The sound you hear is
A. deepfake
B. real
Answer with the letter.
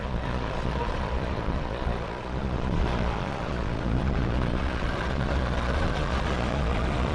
A